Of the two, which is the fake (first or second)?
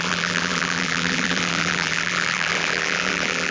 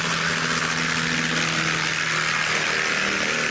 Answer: first